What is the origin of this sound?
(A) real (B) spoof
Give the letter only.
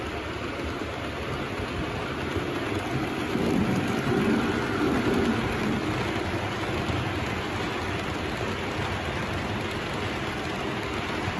A